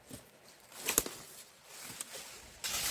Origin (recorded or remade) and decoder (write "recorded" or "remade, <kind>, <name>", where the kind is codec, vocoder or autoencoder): recorded